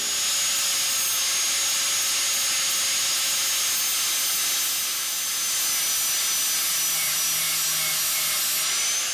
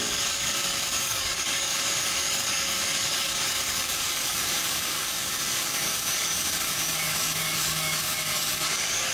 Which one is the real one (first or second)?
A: first